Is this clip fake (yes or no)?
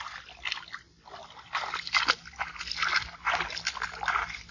no